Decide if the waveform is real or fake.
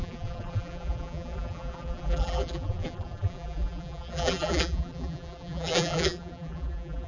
fake